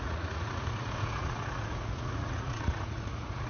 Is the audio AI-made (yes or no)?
yes